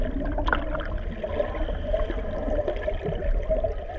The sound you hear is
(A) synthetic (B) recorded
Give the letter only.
B